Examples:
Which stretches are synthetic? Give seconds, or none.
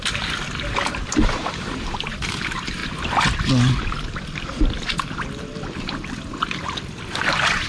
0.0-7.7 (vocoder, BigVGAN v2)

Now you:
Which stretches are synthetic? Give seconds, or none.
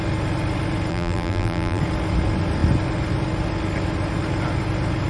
0.9-1.8 (vocoder, BigVGAN v2)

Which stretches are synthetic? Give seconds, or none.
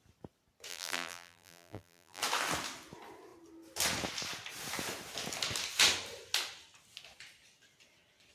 0.7-2.2 (vocoder, BigVGAN v2)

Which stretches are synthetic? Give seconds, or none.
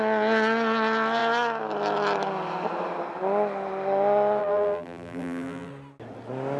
4.4-5.7 (vocoder, BigVGAN v2)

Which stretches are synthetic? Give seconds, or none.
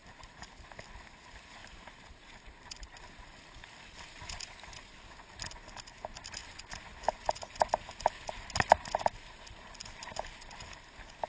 0.0-0.5 (vocoder, BigVGAN v2); 1.6-2.7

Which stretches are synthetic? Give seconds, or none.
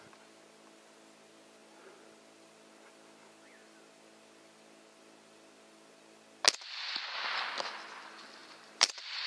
8.4-9.3 (vocoder, BigVGAN v2)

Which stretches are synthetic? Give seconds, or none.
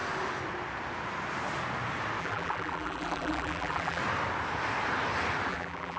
2.2-4.0 (vocoder, BigVGAN v2); 5.5-6.0